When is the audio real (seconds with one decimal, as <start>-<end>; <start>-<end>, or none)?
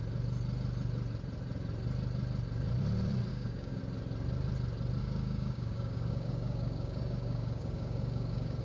0.0-3.3; 3.8-5.0